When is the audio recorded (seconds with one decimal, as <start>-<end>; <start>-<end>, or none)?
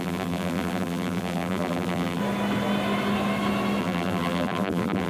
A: 2.2-3.8